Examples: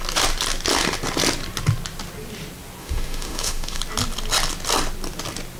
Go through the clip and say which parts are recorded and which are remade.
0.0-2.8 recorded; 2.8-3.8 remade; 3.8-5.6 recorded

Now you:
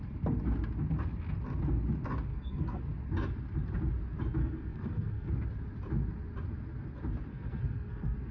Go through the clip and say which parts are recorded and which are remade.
0.0-2.3 recorded; 2.3-2.8 remade; 2.8-4.4 recorded; 4.4-5.3 remade; 5.3-7.3 recorded; 7.3-8.3 remade

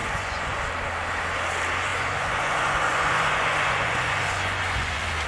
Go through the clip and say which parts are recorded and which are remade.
0.0-0.6 remade; 0.6-1.9 recorded; 1.9-5.3 remade

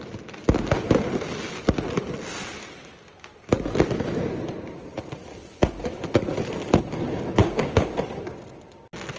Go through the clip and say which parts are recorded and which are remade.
0.0-7.4 recorded; 7.4-7.9 remade; 7.9-9.2 recorded

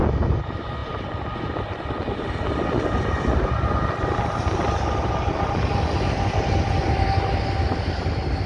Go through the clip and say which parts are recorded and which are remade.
0.0-8.5 recorded

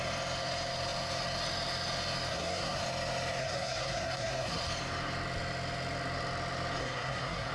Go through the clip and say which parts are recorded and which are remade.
0.0-2.3 recorded; 2.3-2.8 remade; 2.8-3.4 recorded; 3.4-4.6 remade; 4.6-6.8 recorded; 6.8-7.5 remade